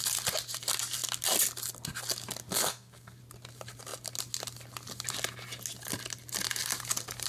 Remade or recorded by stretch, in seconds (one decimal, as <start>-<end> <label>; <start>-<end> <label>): 0.0-2.5 recorded; 2.5-3.2 remade; 3.2-7.3 recorded